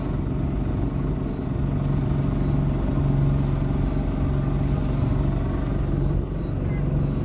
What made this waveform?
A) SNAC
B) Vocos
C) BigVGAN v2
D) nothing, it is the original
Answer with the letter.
D